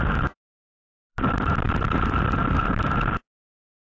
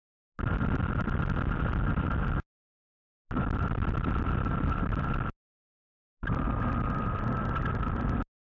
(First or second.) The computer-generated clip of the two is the first